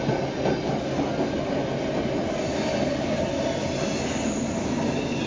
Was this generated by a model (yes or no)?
no